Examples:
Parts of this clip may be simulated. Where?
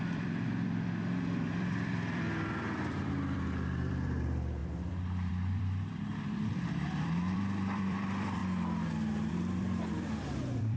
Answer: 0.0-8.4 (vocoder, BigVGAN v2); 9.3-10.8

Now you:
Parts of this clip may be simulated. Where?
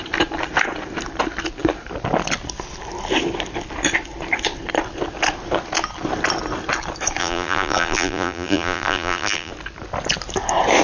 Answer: 7.2-9.5 (vocoder, BigVGAN v2)